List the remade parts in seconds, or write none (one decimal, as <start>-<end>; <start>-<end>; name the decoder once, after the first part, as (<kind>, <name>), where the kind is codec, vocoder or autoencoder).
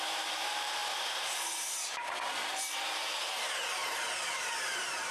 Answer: 0.0-5.1 (vocoder, BigVGAN v2)